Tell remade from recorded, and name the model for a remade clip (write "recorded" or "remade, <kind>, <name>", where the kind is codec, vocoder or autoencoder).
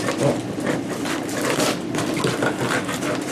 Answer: recorded